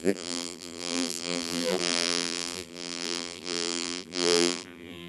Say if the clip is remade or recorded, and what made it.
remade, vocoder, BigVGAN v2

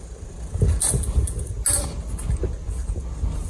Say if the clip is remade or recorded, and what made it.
recorded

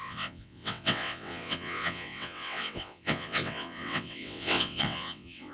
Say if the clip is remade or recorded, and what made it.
remade, vocoder, WaveNeXt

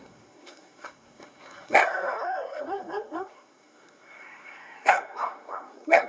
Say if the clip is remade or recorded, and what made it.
remade, codec, SNAC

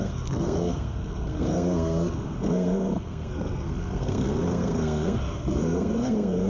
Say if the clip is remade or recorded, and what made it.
remade, codec, SNAC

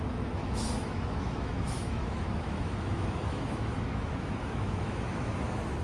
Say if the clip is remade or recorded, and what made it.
remade, autoencoder, DAC-VAE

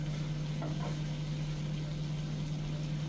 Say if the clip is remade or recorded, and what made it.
recorded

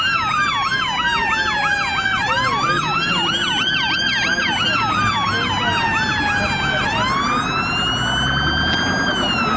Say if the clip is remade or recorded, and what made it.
recorded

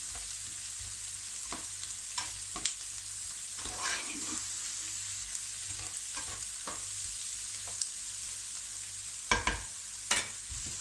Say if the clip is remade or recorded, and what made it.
recorded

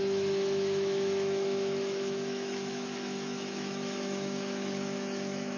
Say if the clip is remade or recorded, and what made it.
remade, autoencoder, DAC-VAE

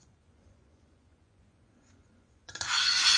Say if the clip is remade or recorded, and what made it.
remade, vocoder, Vocos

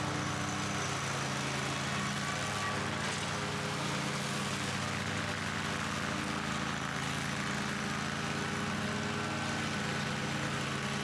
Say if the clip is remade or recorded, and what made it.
recorded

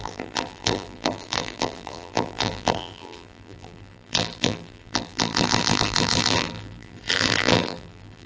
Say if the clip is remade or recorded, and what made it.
remade, vocoder, BigVGAN v2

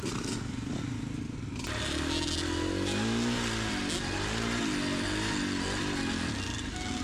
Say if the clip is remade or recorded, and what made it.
recorded